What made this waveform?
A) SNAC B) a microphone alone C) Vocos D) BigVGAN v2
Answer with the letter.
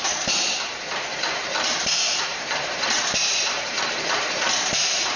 D